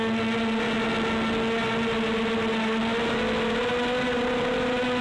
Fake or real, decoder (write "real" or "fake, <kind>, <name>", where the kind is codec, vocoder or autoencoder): real